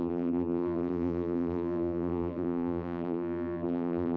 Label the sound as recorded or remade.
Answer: remade